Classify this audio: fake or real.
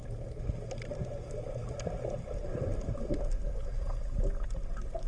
real